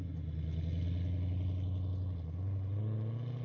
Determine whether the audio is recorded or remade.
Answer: recorded